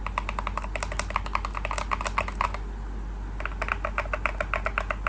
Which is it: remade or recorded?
recorded